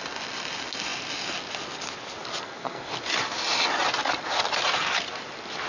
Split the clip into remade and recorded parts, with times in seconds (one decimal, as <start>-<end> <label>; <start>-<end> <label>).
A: 0.0-2.4 recorded; 2.4-2.9 remade; 2.9-5.7 recorded